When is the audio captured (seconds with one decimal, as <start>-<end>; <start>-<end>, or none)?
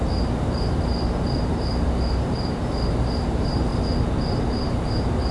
3.7-4.3